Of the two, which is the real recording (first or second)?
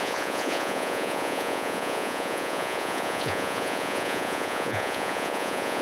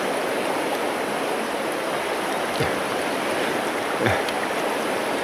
second